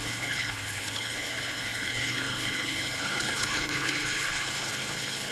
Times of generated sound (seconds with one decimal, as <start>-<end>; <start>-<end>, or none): 0.0-5.3